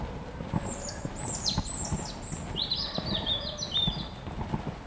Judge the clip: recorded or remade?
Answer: recorded